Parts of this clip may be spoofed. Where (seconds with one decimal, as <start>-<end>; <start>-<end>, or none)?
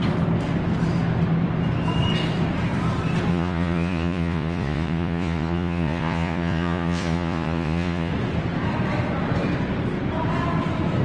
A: 3.3-8.1